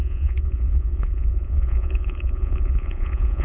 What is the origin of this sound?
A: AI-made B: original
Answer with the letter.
A